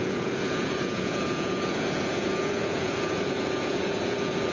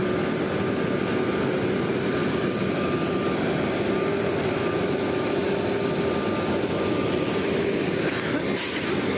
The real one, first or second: second